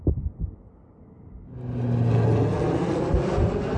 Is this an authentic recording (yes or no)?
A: yes